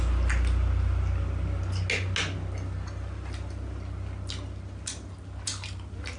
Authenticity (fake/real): real